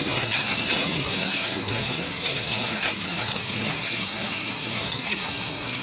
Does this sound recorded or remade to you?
remade